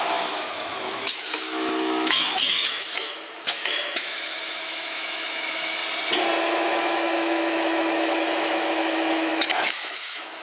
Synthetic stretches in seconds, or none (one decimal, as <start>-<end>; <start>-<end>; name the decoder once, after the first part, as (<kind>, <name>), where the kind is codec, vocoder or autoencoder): 0.0-5.8 (autoencoder, DAC-VAE); 6.4-10.4